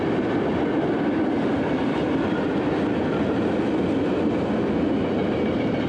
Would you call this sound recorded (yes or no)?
yes